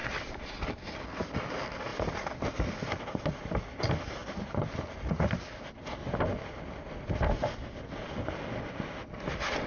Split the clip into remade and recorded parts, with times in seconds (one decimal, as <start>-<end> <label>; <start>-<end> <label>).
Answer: 0.0-1.1 remade; 1.1-1.9 recorded; 1.9-3.5 remade; 3.5-9.7 recorded